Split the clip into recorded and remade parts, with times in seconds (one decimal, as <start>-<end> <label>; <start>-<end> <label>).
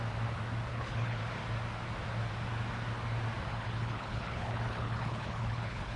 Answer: 0.0-0.7 recorded; 0.7-1.2 remade; 1.2-3.5 recorded; 3.5-6.0 remade